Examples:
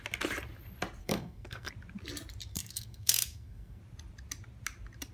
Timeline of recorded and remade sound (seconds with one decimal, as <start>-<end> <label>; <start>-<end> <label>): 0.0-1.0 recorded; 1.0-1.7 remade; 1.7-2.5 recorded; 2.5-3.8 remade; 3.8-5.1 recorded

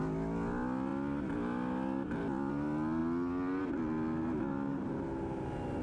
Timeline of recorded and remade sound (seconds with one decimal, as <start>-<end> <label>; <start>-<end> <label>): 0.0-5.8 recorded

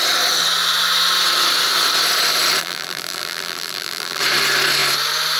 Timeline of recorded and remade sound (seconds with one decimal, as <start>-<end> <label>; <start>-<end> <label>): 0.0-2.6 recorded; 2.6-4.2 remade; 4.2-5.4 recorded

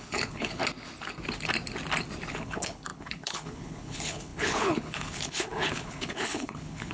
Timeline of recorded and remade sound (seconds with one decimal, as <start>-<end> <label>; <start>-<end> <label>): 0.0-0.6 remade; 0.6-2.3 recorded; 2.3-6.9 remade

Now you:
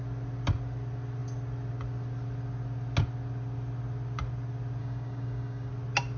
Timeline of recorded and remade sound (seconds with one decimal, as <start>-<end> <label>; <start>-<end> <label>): 0.0-4.8 recorded; 4.8-5.7 remade; 5.7-6.2 recorded

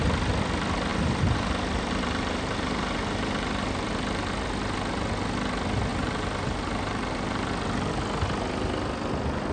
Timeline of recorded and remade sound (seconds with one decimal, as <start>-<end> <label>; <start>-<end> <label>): 0.0-0.9 recorded; 0.9-4.3 remade; 4.3-5.9 recorded; 5.9-7.5 remade; 7.5-9.5 recorded